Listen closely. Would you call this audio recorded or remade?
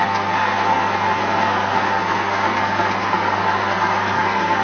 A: remade